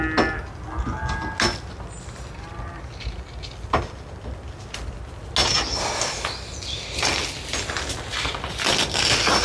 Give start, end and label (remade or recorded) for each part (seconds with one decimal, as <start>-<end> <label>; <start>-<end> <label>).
0.0-9.4 recorded